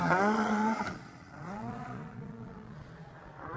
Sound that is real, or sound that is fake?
fake